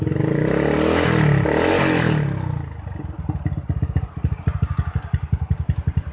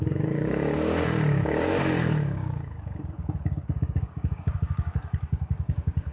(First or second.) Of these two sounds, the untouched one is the first